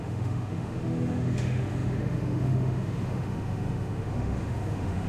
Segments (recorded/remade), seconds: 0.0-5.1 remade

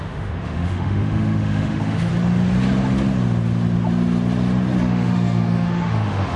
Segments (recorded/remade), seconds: 0.0-2.1 remade; 2.1-4.8 recorded; 4.8-6.4 remade

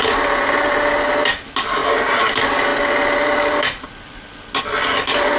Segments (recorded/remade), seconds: 0.0-5.4 recorded

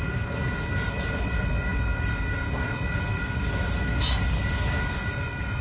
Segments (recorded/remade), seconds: 0.0-5.6 recorded

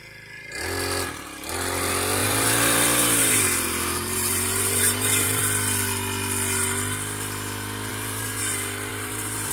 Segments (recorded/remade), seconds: 0.0-2.2 recorded; 2.2-5.4 remade; 5.4-7.9 recorded; 7.9-8.4 remade; 8.4-8.9 recorded; 8.9-9.5 remade

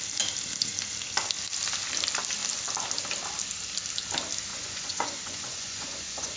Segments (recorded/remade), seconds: 0.0-4.5 recorded; 4.5-6.4 remade

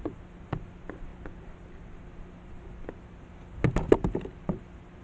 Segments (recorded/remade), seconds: 0.0-5.0 recorded

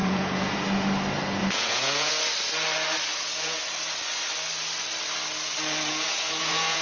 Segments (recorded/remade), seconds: 0.0-0.5 remade; 0.5-1.4 recorded; 1.4-2.1 remade; 2.1-3.1 recorded; 3.1-3.6 remade; 3.6-5.9 recorded; 5.9-6.8 remade